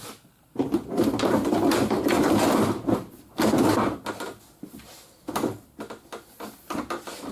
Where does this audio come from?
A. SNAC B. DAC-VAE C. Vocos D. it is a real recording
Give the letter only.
D